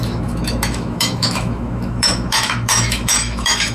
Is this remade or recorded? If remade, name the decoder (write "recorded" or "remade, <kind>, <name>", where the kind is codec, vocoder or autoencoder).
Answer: remade, autoencoder, DAC-VAE